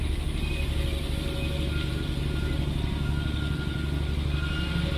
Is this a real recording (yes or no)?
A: yes